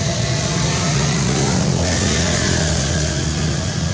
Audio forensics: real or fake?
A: fake